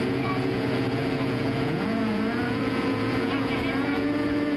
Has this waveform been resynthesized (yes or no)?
yes